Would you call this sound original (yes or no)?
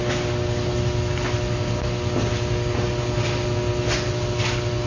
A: yes